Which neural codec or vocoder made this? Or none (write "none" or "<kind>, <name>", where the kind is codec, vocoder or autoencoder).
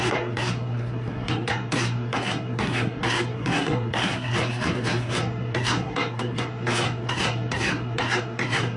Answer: codec, SNAC